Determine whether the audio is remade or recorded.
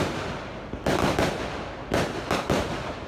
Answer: recorded